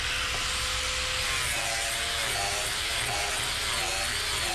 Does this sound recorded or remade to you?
recorded